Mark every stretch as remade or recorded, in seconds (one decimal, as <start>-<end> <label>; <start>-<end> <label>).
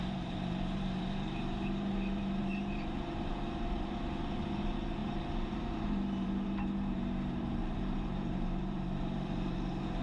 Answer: 0.0-10.0 remade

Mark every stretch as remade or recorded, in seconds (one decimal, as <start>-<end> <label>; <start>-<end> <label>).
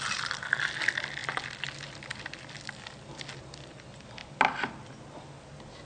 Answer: 0.0-5.9 recorded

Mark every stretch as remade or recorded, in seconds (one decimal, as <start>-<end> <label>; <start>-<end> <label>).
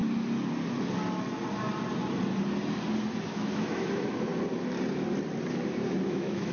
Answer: 0.0-3.3 recorded; 3.3-4.3 remade; 4.3-6.1 recorded; 6.1-6.5 remade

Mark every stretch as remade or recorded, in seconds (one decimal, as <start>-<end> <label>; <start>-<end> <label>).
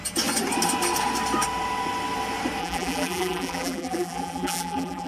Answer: 0.0-2.6 recorded; 2.6-5.1 remade